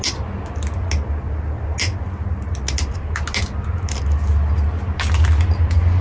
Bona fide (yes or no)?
yes